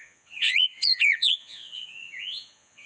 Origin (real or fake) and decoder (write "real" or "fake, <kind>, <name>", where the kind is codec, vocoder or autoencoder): fake, vocoder, Vocos